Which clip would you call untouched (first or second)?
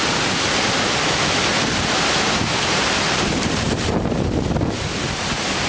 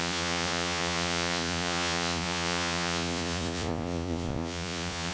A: first